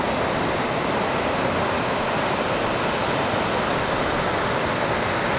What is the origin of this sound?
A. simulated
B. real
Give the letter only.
B